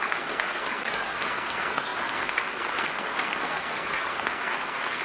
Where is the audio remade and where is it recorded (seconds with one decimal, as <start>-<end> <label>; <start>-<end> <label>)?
0.0-5.0 remade